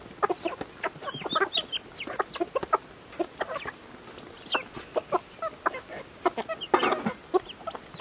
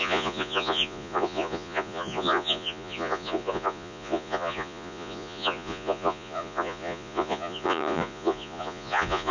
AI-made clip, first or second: second